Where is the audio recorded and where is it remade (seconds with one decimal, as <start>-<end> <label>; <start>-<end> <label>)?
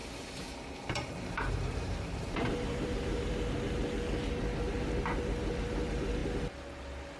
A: 0.0-3.4 remade; 3.4-7.2 recorded